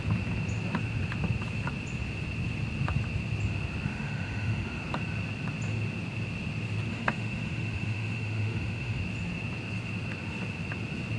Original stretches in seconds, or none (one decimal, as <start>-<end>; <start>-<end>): 0.0-3.9; 4.8-6.9; 9.0-11.2